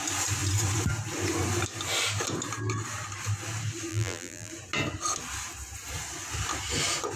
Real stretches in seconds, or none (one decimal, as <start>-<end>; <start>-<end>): 0.0-3.9; 4.5-7.2